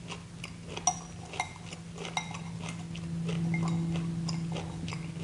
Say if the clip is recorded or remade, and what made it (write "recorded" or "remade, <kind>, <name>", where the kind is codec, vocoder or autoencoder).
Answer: recorded